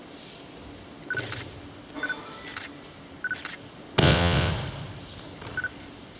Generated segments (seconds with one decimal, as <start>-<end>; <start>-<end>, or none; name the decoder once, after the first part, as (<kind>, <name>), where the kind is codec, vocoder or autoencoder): 4.0-4.5 (vocoder, WaveNeXt)